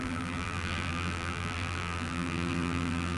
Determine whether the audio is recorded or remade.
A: remade